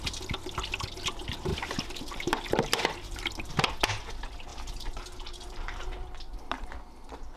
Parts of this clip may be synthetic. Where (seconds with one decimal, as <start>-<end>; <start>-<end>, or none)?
1.5-3.5; 4.5-6.7